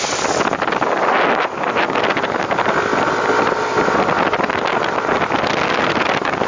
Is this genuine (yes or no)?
yes